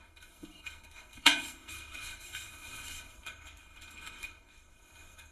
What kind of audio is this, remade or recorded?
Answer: remade